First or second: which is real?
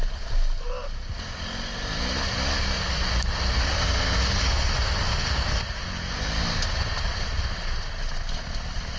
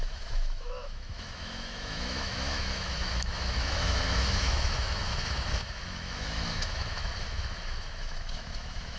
first